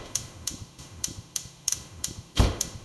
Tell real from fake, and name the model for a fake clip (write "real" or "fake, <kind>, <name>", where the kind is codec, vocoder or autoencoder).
fake, autoencoder, DAC-VAE